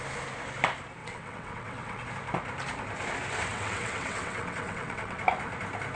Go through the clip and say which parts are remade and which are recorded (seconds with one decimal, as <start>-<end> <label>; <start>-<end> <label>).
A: 0.0-1.0 recorded; 1.0-2.1 remade; 2.1-3.5 recorded; 3.5-5.2 remade; 5.2-6.0 recorded